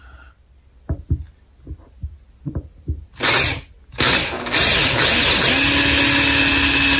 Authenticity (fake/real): real